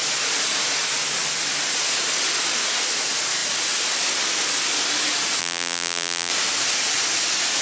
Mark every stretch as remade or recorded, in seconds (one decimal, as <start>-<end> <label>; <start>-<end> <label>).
0.0-5.4 recorded; 5.4-6.3 remade; 6.3-7.6 recorded